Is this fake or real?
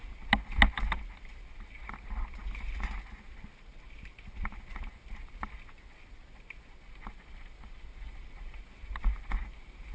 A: real